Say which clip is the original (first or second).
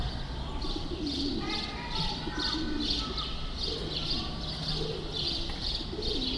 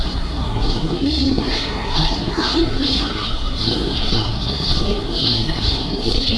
first